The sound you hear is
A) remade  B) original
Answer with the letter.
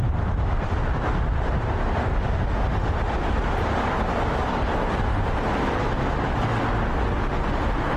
B